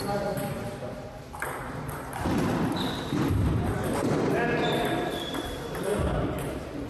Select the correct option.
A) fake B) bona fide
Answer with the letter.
A